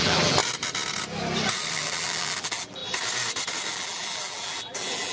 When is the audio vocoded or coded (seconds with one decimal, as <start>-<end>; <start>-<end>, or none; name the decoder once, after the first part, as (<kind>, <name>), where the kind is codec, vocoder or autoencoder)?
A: 0.0-0.4 (vocoder, BigVGAN v2); 1.7-2.8; 3.7-5.1